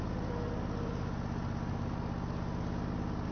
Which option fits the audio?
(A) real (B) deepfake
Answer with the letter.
A